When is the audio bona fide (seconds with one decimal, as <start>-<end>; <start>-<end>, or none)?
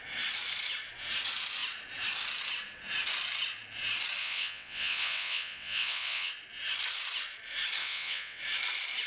0.0-4.2; 6.3-7.8; 8.4-9.1